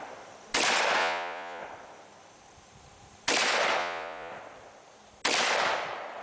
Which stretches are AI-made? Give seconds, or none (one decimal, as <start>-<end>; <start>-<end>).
1.0-1.6; 3.8-4.3